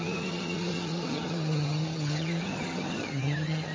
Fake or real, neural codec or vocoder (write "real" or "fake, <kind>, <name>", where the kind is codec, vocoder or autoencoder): fake, vocoder, HiFi-GAN